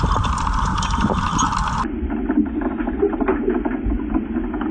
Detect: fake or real real